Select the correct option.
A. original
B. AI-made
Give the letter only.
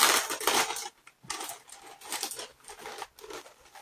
A